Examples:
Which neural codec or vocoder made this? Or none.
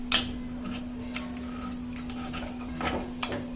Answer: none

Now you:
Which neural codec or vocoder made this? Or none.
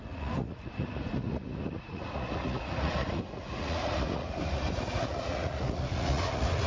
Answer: vocoder, Vocos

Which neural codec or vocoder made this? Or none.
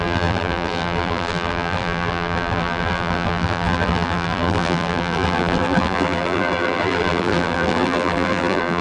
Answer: vocoder, BigVGAN v2